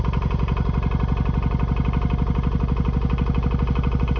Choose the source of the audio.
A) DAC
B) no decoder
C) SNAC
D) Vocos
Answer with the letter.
B